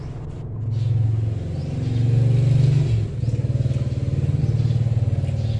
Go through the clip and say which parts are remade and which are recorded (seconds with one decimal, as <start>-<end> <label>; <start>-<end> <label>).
0.0-5.6 recorded